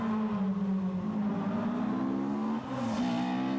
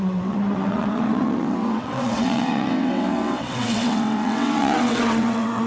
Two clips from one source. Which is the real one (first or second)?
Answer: first